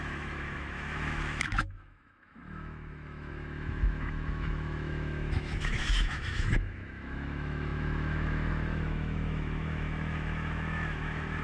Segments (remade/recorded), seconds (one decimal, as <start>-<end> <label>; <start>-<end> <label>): 0.0-11.4 remade